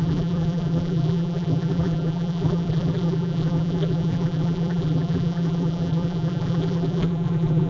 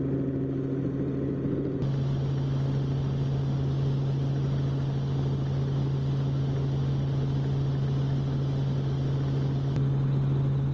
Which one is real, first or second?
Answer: second